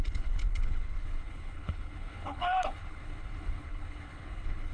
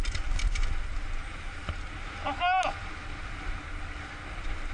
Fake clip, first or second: first